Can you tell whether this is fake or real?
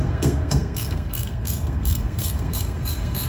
fake